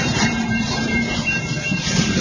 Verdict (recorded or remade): remade